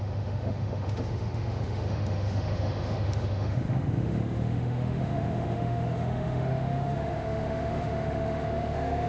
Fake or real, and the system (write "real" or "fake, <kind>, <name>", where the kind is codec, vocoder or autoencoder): fake, autoencoder, DAC-VAE